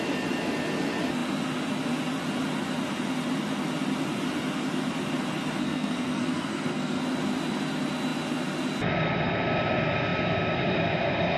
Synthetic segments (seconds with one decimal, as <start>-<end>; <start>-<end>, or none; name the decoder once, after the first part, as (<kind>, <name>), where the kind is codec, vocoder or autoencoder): 5.6-7.0 (codec, SNAC)